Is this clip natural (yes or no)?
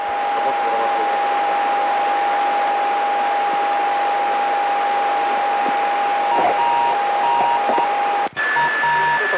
yes